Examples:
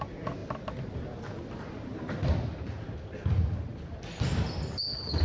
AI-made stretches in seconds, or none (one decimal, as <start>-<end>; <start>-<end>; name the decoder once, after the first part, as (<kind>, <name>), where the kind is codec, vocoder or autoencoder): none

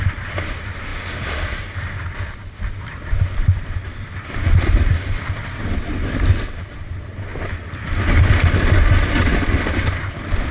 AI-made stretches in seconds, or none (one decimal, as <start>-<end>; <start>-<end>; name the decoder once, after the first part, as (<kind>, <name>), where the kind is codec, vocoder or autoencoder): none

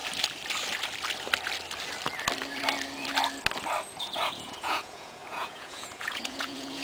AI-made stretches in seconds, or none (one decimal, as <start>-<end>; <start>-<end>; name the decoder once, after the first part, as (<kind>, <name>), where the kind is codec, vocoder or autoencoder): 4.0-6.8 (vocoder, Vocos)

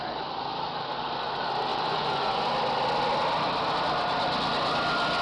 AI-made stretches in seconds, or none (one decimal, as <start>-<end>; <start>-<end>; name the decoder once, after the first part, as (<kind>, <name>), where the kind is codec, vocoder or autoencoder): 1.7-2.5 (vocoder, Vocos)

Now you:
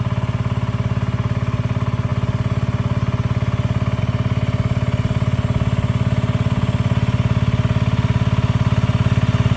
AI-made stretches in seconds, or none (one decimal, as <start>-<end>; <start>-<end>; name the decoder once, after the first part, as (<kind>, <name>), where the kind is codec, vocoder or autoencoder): none

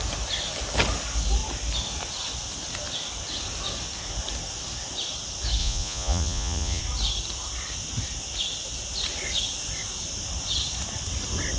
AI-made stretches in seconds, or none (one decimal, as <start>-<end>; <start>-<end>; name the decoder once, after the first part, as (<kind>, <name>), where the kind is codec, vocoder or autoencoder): 5.6-6.8 (vocoder, Vocos)